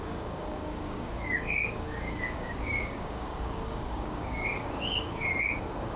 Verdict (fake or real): fake